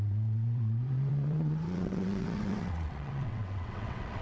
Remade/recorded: remade